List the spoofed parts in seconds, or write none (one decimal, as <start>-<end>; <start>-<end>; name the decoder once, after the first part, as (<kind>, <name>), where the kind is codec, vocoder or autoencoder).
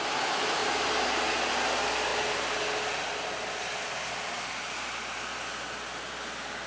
none